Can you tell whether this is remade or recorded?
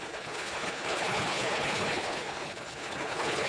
remade